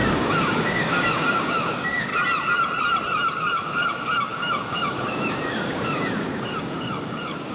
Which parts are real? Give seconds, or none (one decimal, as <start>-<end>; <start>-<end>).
2.1-3.3